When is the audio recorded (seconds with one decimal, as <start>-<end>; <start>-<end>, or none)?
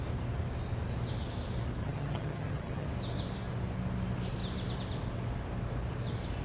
0.0-1.8; 2.9-6.4